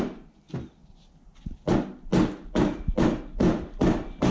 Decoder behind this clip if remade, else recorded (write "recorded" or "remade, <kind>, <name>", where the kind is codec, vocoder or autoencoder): recorded